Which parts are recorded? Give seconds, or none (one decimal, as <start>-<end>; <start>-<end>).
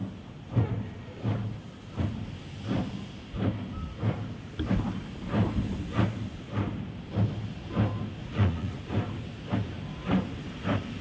0.0-8.2; 8.8-11.0